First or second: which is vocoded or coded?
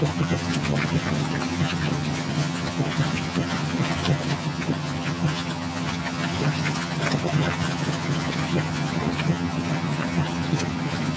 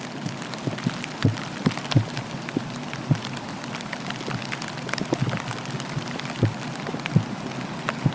first